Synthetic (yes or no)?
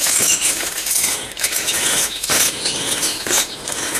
yes